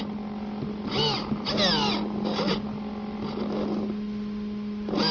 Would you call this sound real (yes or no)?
yes